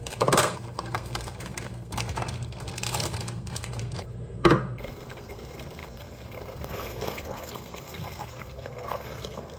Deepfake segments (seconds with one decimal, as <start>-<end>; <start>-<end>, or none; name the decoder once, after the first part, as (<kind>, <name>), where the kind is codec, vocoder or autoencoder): 0.0-9.6 (codec, SNAC)

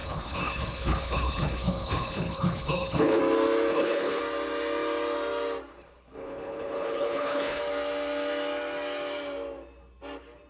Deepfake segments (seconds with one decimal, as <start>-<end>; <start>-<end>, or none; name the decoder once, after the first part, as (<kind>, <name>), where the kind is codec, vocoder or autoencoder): 0.0-3.2 (codec, HILCodec); 3.7-4.2; 5.7-7.6